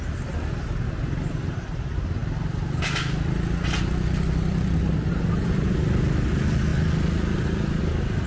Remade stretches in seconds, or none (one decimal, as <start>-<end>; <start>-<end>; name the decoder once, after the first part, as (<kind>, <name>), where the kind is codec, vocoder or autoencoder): none

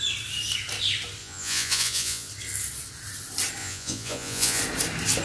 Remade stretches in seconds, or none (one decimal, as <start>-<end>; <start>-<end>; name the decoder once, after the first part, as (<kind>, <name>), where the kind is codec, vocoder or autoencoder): 1.2-2.3 (vocoder, Vocos); 3.6-4.6

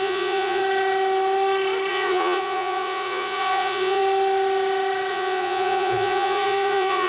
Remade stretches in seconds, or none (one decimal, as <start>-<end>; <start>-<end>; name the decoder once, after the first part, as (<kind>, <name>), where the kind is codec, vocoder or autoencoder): 0.0-0.6 (vocoder, Vocos); 1.9-4.0; 5.1-7.1

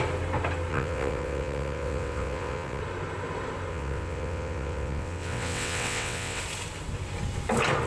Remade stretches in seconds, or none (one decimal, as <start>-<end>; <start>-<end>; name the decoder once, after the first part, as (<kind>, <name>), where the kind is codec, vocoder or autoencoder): 0.7-2.8 (vocoder, WaveNeXt); 3.7-6.4